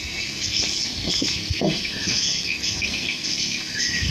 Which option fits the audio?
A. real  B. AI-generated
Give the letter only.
B